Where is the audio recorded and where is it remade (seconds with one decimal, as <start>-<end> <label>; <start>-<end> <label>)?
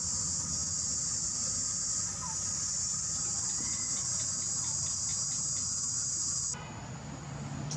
0.0-7.8 recorded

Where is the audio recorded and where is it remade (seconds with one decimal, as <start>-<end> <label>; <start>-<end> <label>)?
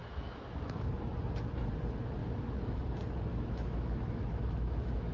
0.0-0.9 remade; 0.9-2.2 recorded; 2.2-2.8 remade; 2.8-3.3 recorded; 3.3-5.1 remade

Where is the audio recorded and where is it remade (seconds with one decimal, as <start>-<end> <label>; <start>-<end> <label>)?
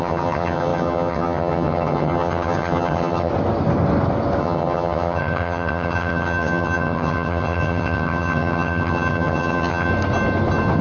0.0-3.3 remade; 3.3-4.4 recorded; 4.4-9.9 remade; 9.9-10.8 recorded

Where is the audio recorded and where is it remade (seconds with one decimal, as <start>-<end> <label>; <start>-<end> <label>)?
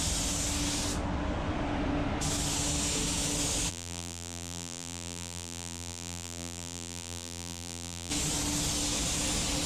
0.0-3.7 recorded; 3.7-8.1 remade; 8.1-9.7 recorded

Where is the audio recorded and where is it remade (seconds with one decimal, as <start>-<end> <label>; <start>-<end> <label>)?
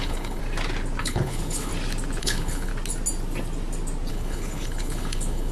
0.0-0.4 remade; 0.4-1.0 recorded; 1.0-1.7 remade; 1.7-2.2 recorded; 2.2-2.7 remade; 2.7-4.1 recorded; 4.1-5.5 remade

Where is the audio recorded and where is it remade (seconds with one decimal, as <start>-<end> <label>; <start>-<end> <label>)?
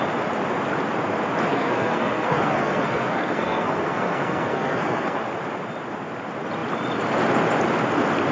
0.0-1.5 recorded; 1.5-5.2 remade; 5.2-8.3 recorded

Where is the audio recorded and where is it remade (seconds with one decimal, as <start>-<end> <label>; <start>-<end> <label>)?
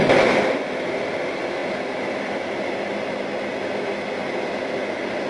0.0-5.3 recorded